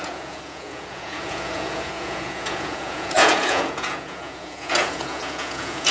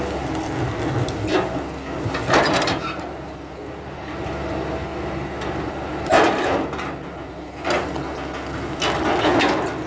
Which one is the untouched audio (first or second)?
second